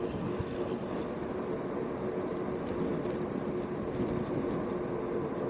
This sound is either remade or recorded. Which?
recorded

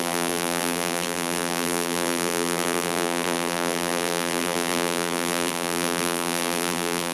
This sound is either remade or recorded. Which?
remade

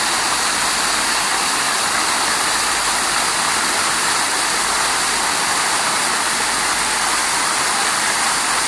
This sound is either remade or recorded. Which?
remade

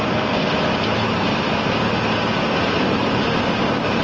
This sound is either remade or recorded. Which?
remade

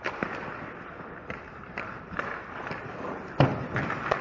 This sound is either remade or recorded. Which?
recorded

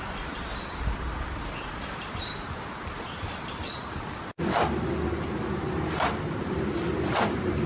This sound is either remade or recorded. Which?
remade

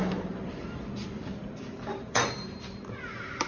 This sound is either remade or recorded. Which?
remade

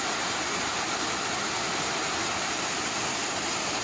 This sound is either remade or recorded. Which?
recorded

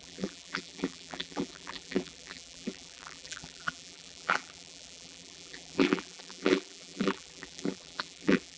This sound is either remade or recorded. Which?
remade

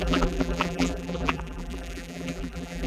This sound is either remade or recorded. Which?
remade